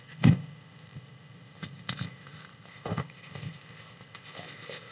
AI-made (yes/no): yes